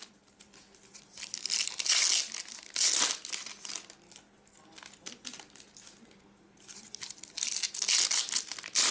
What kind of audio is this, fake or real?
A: real